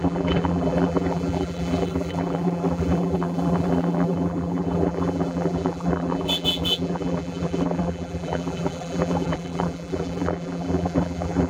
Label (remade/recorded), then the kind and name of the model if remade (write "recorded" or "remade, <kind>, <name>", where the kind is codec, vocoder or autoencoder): remade, vocoder, BigVGAN v2